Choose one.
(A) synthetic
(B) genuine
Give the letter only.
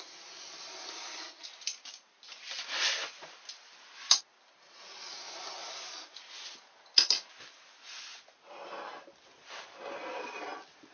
B